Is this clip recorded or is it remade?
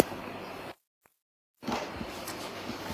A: recorded